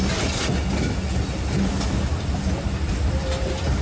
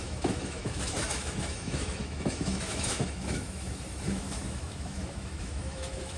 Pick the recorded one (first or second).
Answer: first